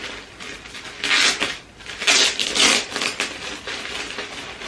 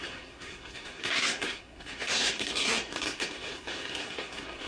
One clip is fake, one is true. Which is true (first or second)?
first